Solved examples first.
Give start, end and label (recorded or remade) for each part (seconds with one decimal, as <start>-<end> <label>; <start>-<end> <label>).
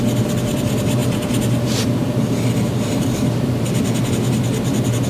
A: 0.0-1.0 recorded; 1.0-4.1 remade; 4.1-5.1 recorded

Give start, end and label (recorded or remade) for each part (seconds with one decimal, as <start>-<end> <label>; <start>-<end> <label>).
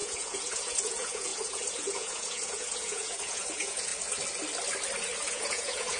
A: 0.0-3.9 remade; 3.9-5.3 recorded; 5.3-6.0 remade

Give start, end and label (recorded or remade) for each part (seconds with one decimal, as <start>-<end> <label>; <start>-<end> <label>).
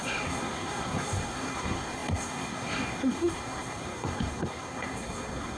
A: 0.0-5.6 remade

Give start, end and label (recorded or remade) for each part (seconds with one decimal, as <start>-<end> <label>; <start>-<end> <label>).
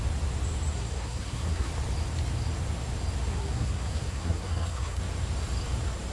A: 0.0-0.7 recorded; 0.7-1.7 remade; 1.7-3.3 recorded; 3.3-5.0 remade; 5.0-6.1 recorded